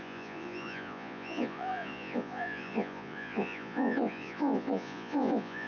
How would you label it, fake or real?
fake